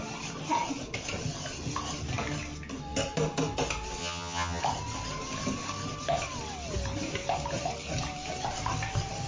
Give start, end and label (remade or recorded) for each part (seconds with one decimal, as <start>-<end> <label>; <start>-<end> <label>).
0.0-4.0 recorded; 4.0-4.6 remade; 4.6-9.3 recorded